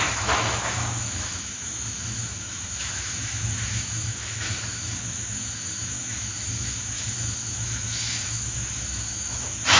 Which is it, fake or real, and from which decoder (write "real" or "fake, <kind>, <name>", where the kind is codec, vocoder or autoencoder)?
fake, autoencoder, DAC-VAE